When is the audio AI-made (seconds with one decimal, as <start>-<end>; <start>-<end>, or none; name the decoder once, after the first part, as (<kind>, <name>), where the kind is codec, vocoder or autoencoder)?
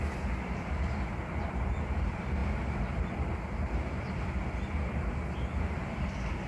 0.0-6.5 (vocoder, BigVGAN v2)